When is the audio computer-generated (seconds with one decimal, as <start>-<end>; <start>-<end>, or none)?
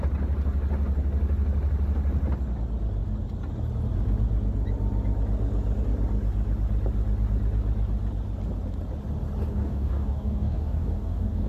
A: 9.5-11.5